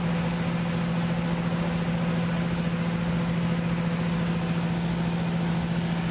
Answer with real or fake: real